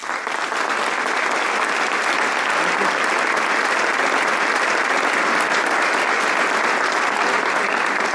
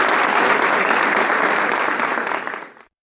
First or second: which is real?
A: first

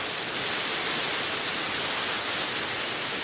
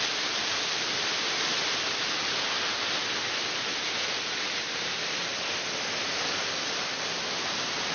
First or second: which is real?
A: first